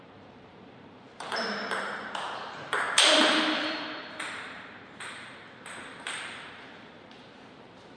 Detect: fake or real fake